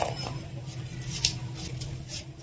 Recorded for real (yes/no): yes